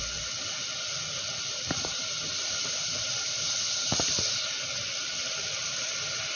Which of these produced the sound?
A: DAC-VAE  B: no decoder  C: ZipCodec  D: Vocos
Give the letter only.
B